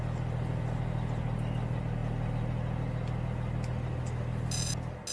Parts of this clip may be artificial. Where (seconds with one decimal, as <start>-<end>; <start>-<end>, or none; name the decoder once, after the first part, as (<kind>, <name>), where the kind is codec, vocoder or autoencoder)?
none